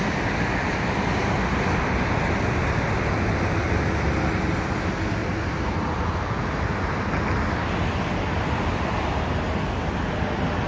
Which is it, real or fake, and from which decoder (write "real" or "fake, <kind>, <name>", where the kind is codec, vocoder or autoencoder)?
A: real